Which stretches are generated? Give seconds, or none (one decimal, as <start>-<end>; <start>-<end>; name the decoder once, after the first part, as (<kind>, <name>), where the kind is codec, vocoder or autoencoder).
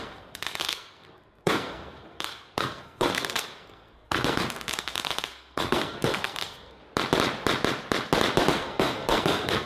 0.0-6.8 (codec, SNAC); 8.5-9.7